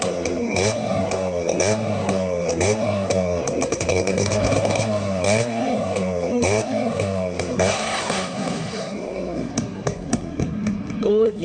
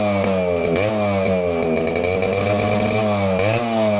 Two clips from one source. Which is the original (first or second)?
second